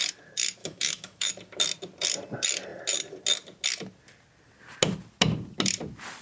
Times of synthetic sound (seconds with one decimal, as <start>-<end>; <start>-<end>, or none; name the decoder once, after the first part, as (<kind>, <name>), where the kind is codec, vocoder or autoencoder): 0.6-1.3 (autoencoder, DAC-VAE)